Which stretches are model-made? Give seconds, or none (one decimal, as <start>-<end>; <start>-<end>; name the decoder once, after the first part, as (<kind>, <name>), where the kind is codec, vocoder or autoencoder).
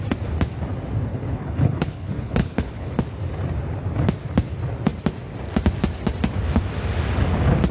1.1-3.0 (codec, HILCodec)